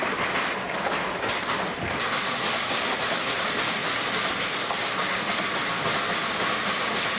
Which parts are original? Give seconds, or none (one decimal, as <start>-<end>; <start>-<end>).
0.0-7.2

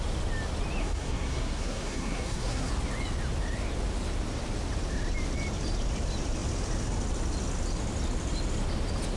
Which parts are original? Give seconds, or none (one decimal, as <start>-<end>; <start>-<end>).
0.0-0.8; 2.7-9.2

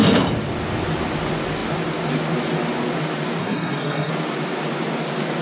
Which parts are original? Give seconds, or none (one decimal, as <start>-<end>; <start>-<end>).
0.0-3.4; 4.1-5.4

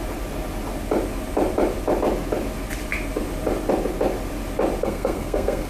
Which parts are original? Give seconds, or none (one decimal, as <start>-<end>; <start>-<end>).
0.0-4.8